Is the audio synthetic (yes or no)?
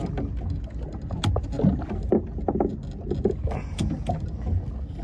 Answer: no